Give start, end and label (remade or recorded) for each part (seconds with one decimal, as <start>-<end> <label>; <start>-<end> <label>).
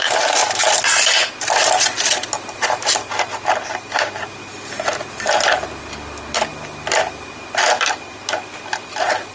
0.0-9.3 recorded